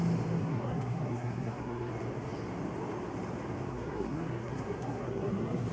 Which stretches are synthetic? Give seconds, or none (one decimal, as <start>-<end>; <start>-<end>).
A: 0.4-1.9; 3.7-5.7